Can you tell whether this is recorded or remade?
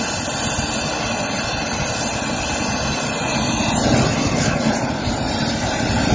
recorded